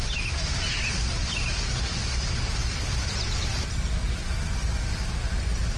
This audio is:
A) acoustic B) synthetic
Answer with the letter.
B